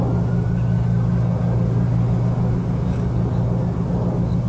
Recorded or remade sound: recorded